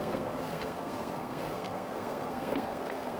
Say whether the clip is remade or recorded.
remade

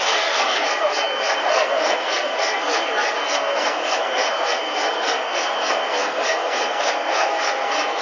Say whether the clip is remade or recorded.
remade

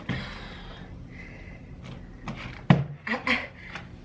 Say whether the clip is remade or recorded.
recorded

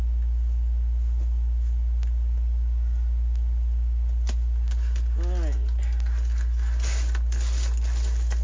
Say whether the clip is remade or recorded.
recorded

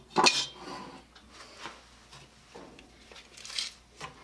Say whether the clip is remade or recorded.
recorded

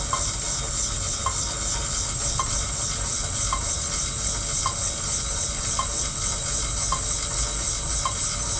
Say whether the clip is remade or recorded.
recorded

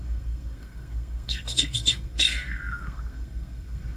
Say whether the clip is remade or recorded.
remade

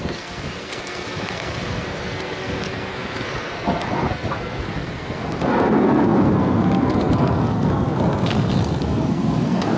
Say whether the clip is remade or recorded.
remade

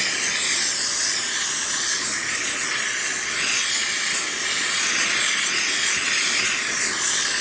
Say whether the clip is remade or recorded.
recorded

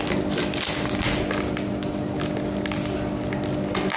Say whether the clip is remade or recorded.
recorded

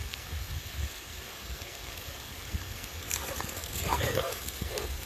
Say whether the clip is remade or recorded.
remade